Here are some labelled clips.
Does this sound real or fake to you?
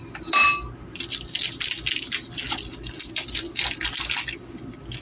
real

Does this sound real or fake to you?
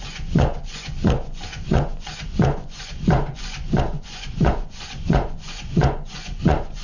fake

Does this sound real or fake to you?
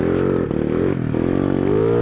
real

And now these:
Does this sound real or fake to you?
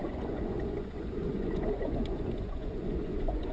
fake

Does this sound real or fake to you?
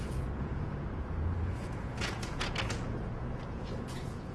fake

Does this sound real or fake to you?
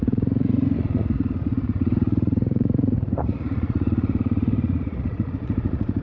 fake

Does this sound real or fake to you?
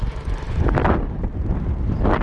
real